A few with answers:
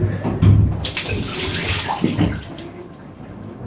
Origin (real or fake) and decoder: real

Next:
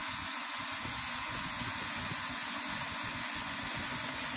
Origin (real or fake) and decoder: fake, vocoder, Vocos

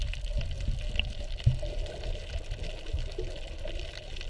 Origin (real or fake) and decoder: real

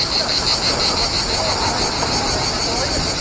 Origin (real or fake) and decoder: real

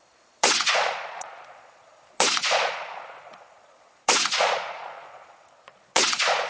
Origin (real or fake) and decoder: fake, vocoder, Vocos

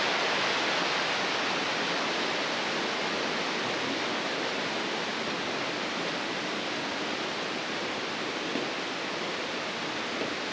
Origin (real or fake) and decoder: real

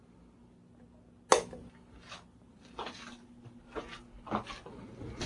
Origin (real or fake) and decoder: real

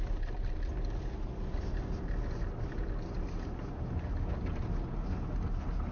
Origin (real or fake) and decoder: real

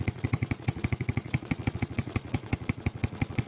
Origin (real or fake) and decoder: fake, vocoder, Vocos